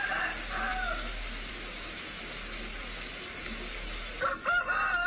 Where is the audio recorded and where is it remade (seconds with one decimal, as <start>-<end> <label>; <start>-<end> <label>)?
0.0-5.1 recorded